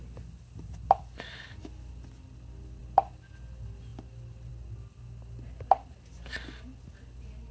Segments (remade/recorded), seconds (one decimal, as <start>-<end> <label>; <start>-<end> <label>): 0.0-7.5 recorded